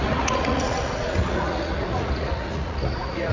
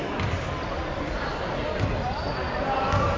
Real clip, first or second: second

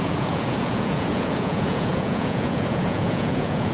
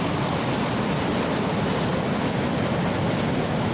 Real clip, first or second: second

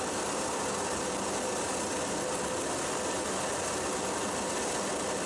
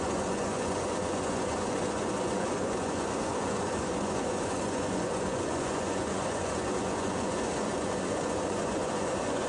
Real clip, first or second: first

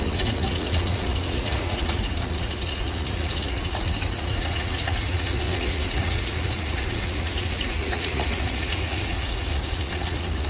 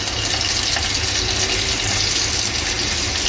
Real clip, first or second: second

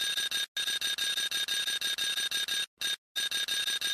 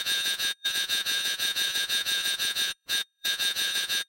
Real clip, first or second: first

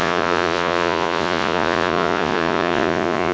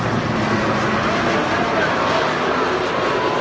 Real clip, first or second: second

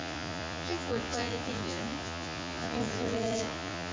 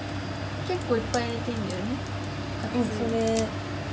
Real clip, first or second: second